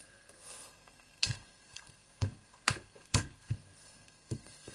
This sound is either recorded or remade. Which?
remade